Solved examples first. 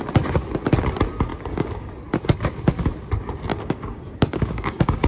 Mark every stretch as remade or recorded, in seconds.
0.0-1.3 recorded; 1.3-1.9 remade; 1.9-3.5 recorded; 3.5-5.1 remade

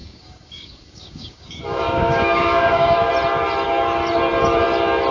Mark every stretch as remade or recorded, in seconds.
0.0-3.1 remade; 3.1-5.1 recorded

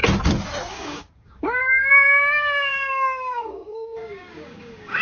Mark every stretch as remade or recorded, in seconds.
0.0-0.7 recorded; 0.7-5.0 remade

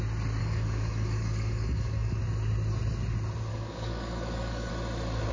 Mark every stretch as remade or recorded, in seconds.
0.0-0.4 recorded; 0.4-2.2 remade; 2.2-3.5 recorded; 3.5-4.7 remade; 4.7-5.3 recorded